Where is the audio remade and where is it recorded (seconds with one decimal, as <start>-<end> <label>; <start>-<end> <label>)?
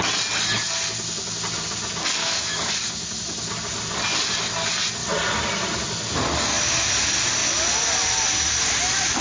0.0-2.2 recorded; 2.2-2.7 remade; 2.7-9.2 recorded